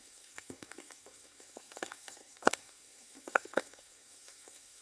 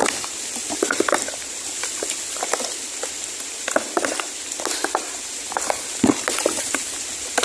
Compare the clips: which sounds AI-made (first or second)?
first